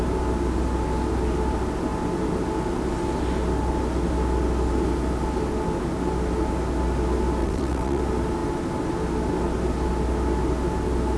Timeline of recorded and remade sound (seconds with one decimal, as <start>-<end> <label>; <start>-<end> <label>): 0.0-7.4 recorded; 7.4-8.0 remade; 8.0-11.2 recorded